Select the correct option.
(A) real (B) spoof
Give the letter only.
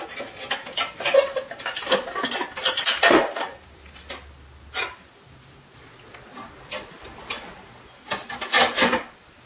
A